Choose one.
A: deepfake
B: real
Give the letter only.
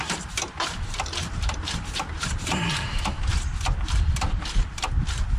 A